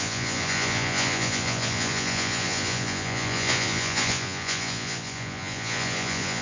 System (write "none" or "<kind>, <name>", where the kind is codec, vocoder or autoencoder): vocoder, Vocos